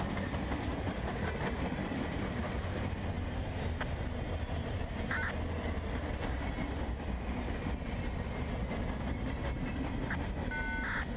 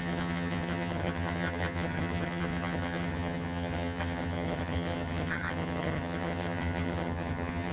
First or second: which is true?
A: first